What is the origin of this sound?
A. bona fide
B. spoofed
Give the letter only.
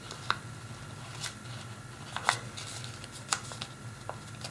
A